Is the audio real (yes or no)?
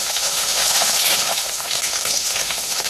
no